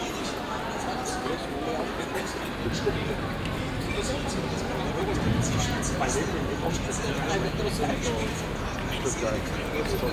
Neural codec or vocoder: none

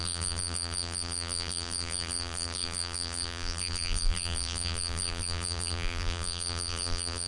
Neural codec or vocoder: vocoder, BigVGAN v2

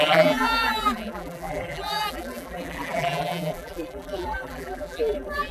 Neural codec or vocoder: vocoder, BigVGAN v2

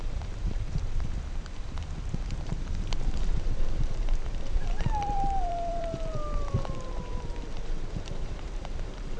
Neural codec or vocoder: vocoder, BigVGAN v2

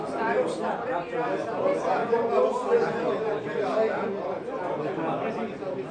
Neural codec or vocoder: none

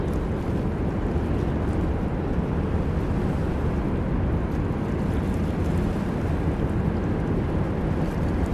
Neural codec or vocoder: none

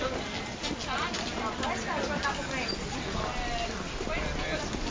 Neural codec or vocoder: none